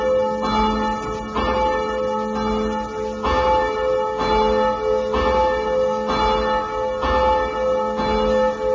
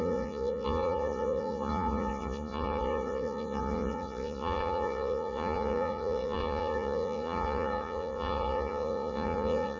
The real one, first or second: first